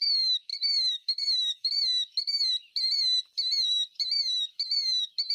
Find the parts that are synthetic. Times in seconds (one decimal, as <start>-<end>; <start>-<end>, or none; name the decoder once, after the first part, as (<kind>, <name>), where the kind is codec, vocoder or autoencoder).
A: 0.5-1.7 (autoencoder, DAC-VAE)